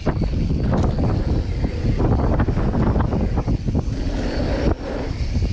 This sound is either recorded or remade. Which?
recorded